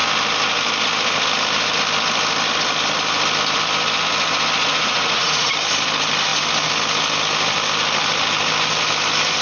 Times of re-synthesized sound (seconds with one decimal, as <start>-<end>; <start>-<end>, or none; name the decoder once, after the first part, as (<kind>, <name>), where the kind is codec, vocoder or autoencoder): 4.6-5.5 (vocoder, Vocos)